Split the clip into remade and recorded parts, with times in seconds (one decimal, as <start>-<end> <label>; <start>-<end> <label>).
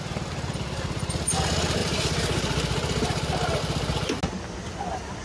0.0-1.8 recorded; 1.8-3.6 remade; 3.6-5.2 recorded